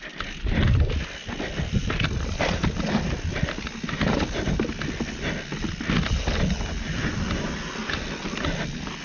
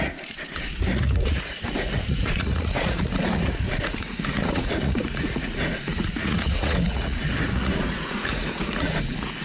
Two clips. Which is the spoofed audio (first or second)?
second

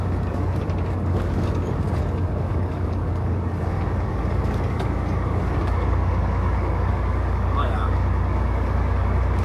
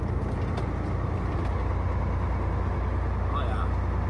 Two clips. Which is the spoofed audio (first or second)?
first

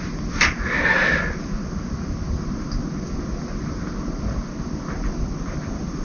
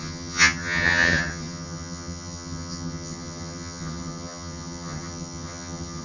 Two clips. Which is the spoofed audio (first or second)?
second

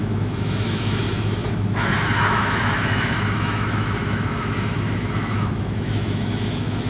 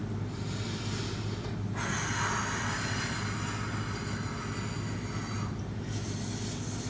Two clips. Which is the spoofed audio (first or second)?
first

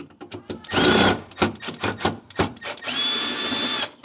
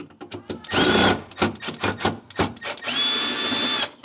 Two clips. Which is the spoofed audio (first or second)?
first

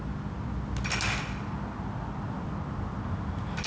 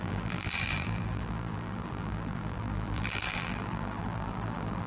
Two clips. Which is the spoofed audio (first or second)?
second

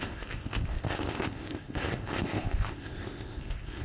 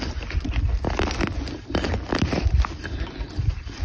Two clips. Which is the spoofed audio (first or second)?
first